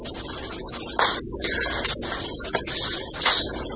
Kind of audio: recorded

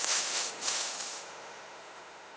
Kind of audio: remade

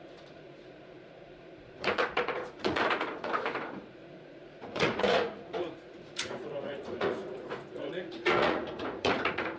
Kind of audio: remade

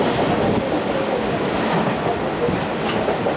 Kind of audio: recorded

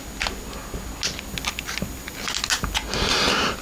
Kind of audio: recorded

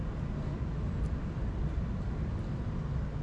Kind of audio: recorded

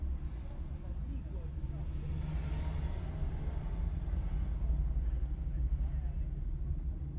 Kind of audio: recorded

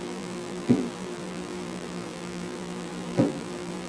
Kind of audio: remade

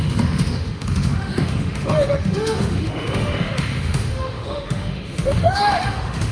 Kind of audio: remade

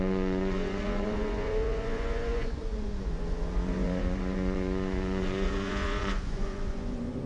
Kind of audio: remade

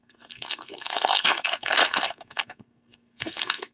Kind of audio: remade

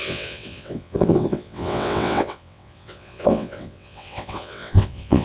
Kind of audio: remade